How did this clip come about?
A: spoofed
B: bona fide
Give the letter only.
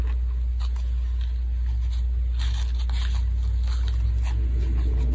B